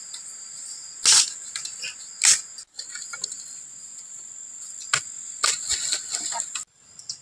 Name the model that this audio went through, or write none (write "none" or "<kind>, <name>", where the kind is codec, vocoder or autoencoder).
none